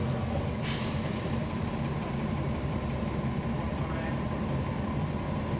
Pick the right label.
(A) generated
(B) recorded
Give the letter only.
B